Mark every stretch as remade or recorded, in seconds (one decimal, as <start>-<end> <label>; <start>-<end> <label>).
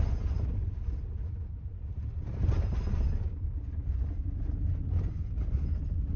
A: 0.0-6.2 recorded